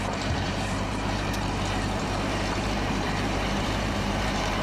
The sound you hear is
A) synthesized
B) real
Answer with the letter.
A